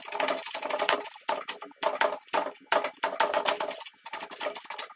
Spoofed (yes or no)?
no